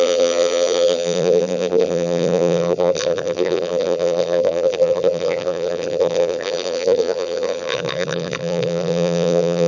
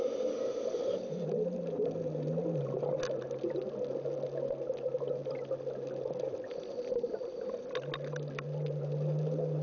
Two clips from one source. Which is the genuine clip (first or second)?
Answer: second